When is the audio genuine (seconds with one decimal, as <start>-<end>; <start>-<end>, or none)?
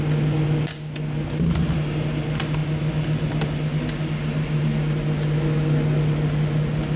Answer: 0.0-7.0